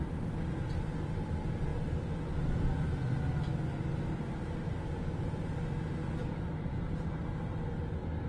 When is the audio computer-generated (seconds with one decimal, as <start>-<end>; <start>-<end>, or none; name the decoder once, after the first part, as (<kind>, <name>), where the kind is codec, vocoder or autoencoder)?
6.2-7.2 (vocoder, BigVGAN v2)